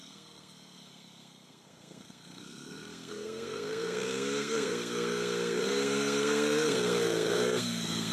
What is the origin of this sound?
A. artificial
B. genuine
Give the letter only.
A